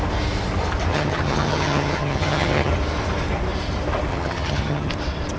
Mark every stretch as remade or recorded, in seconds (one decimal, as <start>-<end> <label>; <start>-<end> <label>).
0.0-0.9 recorded; 0.9-2.7 remade; 2.7-4.1 recorded; 4.1-4.9 remade; 4.9-5.4 recorded